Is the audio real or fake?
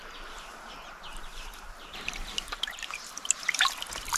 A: fake